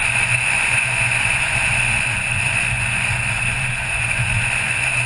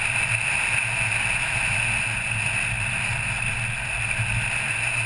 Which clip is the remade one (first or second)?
first